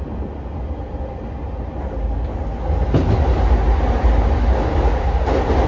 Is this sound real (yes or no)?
yes